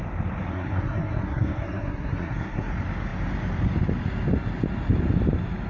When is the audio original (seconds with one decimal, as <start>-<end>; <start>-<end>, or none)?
0.0-0.5; 2.7-5.7